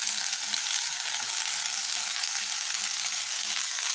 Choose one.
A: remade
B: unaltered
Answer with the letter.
A